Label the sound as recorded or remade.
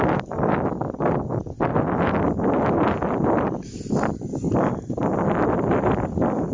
recorded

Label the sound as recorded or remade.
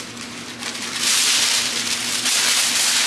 remade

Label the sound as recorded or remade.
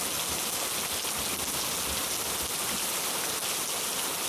recorded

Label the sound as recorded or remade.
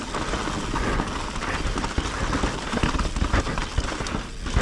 recorded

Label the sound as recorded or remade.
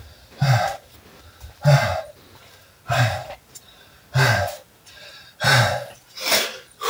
recorded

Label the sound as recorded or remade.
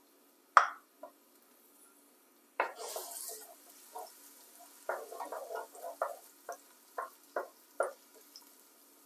recorded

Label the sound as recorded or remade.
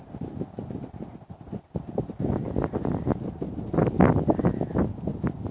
recorded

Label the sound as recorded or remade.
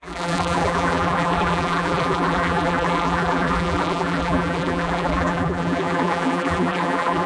remade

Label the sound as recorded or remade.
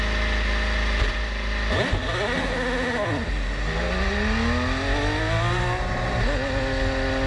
recorded